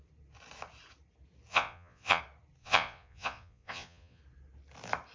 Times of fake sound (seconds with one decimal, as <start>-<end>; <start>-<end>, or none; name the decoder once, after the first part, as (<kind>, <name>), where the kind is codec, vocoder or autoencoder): 1.5-2.2 (vocoder, Vocos); 2.6-4.2

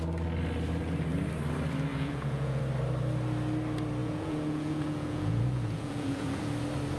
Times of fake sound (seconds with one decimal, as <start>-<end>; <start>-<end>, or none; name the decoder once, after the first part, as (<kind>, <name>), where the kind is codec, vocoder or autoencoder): 1.9-2.6 (vocoder, Vocos); 4.0-6.4

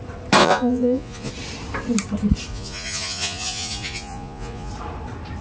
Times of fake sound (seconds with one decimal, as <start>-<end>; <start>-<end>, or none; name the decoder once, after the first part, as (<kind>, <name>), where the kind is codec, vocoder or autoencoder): 0.4-1.3 (vocoder, Vocos); 2.5-4.7